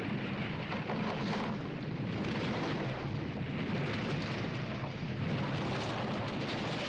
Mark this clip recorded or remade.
recorded